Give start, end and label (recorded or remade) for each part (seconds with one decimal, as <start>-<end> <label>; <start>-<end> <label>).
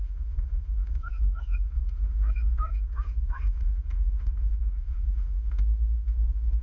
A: 0.0-6.6 remade